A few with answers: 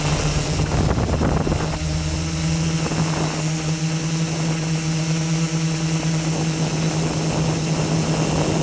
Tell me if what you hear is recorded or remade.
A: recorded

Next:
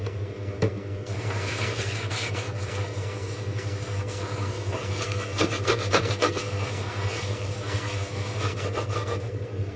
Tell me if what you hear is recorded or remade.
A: remade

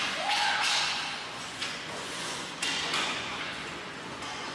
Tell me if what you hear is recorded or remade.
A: remade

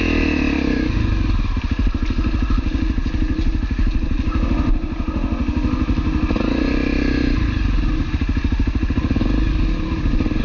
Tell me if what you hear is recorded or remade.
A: recorded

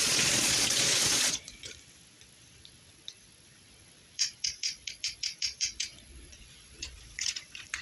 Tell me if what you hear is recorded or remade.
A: remade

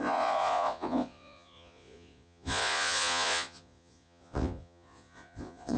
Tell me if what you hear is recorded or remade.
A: remade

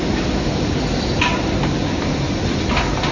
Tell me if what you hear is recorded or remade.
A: recorded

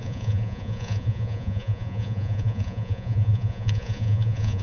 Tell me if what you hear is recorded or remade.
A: remade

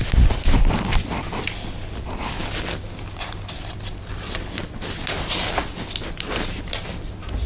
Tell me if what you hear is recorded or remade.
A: recorded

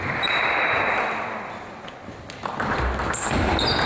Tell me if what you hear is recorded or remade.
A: recorded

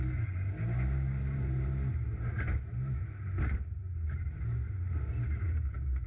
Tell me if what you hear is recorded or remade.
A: recorded